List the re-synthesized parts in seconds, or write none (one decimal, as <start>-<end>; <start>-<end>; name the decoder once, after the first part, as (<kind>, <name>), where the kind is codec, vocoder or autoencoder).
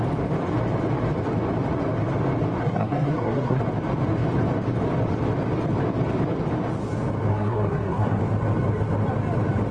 2.6-3.6 (codec, SNAC); 7.3-8.2